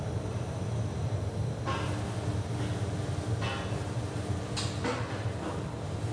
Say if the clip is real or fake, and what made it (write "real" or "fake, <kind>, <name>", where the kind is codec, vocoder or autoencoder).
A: real